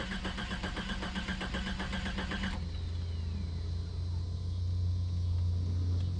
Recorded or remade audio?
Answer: recorded